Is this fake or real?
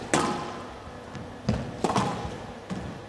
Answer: real